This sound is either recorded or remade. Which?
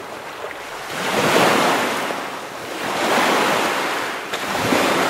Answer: recorded